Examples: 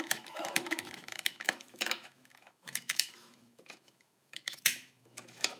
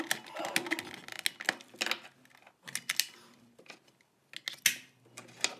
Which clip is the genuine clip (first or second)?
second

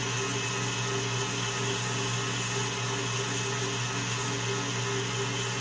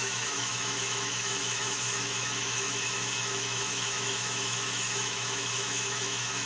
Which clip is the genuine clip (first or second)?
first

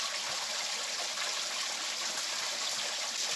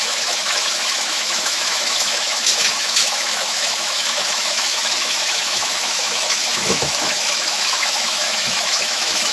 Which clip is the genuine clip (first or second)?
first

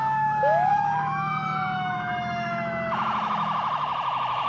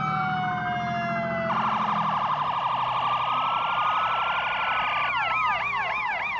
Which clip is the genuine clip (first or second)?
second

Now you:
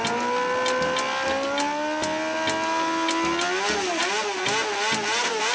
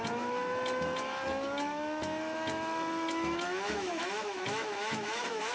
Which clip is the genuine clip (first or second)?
first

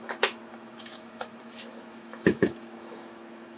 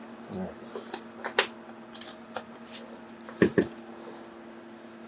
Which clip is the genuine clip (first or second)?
second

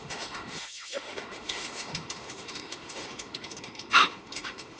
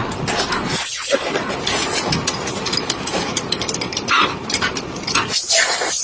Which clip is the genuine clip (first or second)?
second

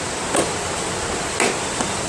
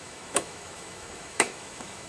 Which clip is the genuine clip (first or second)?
first